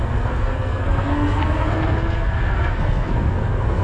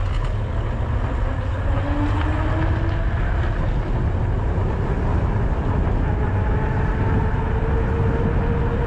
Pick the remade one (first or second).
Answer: first